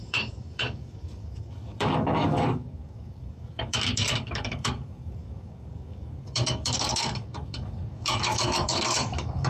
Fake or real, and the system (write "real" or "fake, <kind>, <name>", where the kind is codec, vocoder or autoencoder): fake, codec, DAC